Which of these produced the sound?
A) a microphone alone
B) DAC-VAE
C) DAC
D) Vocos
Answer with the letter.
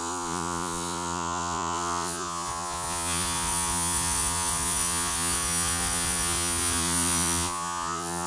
D